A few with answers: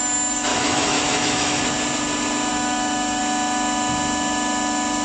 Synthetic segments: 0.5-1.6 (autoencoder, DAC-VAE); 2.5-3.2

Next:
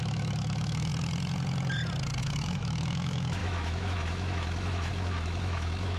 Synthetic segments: 0.0-0.9 (autoencoder, DAC-VAE); 2.2-6.0

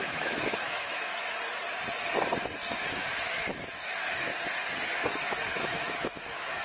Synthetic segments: 0.0-1.1 (autoencoder, DAC-VAE); 2.9-4.3; 5.0-6.6

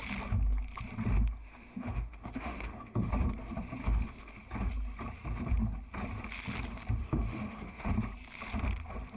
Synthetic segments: 1.4-3.1 (autoencoder, DAC-VAE); 3.8-4.3; 7.0-7.9